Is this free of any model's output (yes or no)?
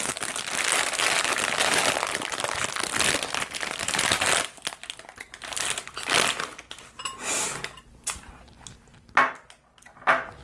yes